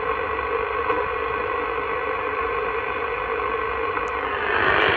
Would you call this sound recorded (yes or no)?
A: yes